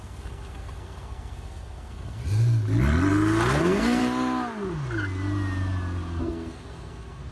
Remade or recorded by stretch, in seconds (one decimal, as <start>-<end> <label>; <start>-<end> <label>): 0.0-2.2 remade; 2.2-3.6 recorded; 3.6-4.0 remade; 4.0-6.2 recorded; 6.2-7.3 remade